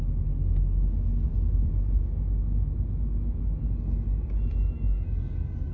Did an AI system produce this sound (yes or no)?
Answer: no